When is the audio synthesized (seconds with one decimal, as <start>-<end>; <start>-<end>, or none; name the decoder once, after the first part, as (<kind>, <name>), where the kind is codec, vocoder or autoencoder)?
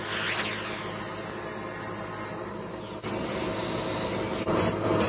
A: none